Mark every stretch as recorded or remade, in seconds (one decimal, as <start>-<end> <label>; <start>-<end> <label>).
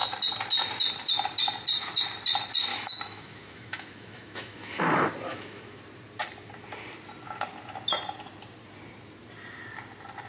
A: 0.0-2.7 recorded; 2.7-4.8 remade; 4.8-5.3 recorded; 5.3-5.8 remade; 5.8-10.3 recorded